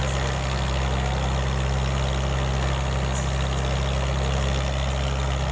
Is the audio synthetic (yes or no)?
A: no